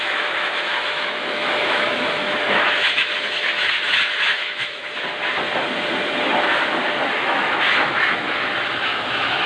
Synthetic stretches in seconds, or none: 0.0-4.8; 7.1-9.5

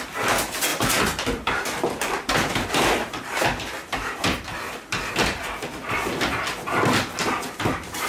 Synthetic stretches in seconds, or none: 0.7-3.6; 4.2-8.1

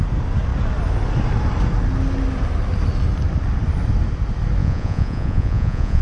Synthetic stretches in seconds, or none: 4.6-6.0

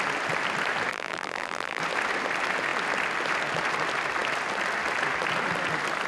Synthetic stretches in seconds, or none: 0.9-1.8

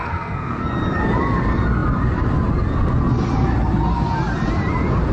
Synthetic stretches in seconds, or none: 0.0-0.7

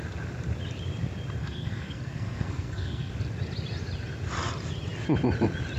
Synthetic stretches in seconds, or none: 1.4-3.1

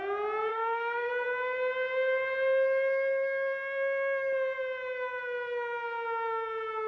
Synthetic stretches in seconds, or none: 0.5-1.1